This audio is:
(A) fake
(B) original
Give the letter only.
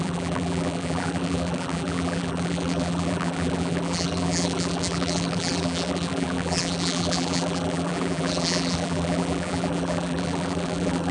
A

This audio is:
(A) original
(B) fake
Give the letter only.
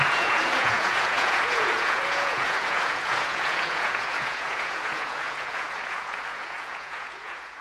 B